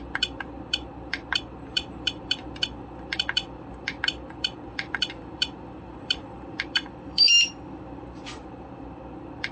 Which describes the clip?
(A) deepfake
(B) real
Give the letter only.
A